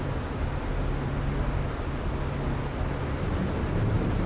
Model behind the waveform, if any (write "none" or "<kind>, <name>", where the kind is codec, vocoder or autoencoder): none